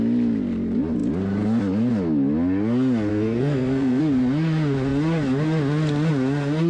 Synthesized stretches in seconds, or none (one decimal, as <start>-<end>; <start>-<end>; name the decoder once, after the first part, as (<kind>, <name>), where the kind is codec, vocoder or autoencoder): 3.1-4.0 (codec, SNAC)